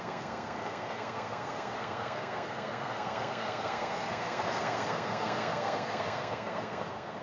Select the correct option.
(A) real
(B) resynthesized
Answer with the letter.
B